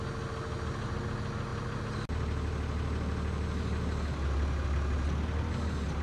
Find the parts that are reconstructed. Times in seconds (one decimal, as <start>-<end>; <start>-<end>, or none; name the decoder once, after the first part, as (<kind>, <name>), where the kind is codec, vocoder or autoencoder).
none